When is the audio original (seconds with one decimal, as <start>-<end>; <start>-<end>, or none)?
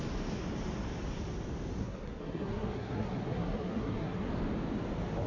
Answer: 0.0-1.8; 4.3-5.3